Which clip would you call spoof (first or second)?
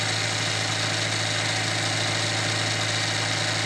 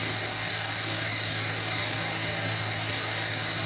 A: second